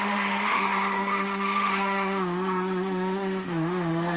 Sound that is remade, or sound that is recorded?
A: remade